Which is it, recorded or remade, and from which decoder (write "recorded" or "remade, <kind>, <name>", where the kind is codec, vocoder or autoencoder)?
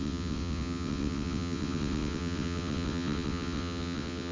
remade, vocoder, WaveNeXt